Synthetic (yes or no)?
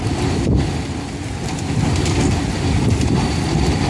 no